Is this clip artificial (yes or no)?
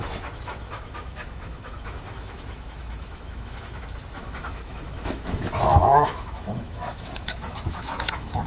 yes